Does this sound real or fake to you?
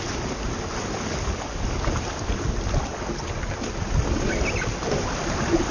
real